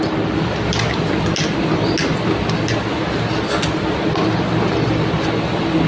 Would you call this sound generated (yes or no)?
no